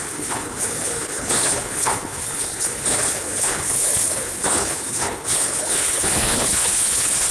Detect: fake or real fake